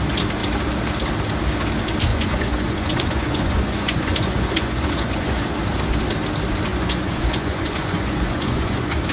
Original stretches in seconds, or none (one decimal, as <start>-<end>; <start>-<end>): 0.0-2.1; 5.5-6.7